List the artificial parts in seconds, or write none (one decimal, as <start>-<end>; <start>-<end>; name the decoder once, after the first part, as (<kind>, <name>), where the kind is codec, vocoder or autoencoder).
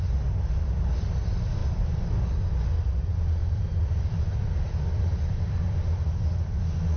1.6-2.2 (vocoder, BigVGAN v2); 3.4-5.0